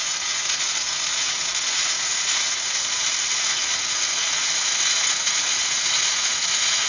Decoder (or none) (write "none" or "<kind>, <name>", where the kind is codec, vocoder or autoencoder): vocoder, Vocos